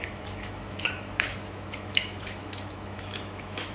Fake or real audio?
fake